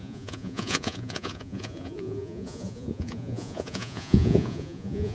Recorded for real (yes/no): no